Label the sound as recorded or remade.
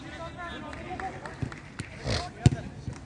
recorded